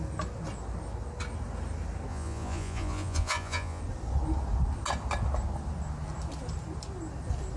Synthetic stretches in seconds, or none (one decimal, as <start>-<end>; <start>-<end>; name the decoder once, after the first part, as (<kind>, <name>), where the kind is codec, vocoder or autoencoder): 2.1-3.8 (vocoder, Vocos)